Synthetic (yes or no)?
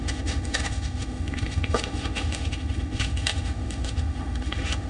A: yes